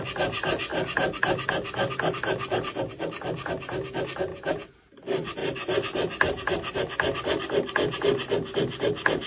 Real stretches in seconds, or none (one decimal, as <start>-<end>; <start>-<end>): 0.0-4.3; 4.9-9.3